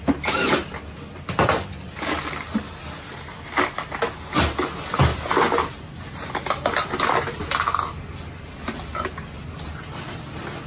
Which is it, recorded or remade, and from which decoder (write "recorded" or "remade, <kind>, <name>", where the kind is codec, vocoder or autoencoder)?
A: recorded